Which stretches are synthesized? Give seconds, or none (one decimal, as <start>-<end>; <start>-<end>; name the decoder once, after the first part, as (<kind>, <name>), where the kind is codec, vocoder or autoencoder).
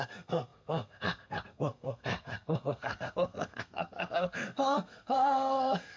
0.0-6.0 (codec, SNAC)